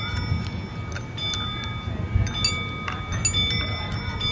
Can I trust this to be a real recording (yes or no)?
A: yes